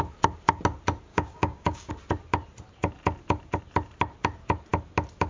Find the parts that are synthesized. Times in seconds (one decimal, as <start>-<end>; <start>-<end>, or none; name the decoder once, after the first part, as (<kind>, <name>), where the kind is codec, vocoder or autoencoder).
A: 1.1-1.9 (codec, DAC)